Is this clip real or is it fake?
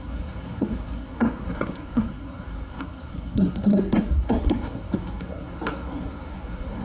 fake